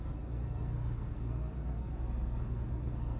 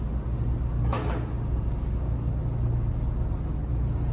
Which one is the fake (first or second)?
first